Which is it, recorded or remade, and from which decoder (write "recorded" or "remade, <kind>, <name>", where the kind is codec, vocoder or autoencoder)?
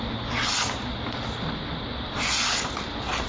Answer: recorded